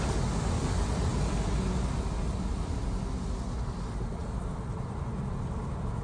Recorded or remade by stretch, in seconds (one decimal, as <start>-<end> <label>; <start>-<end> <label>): 0.0-4.2 recorded; 4.2-5.2 remade; 5.2-6.0 recorded